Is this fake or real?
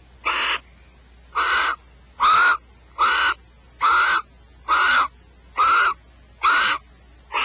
real